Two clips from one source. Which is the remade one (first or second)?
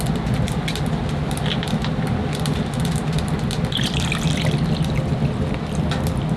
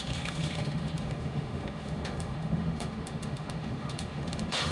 second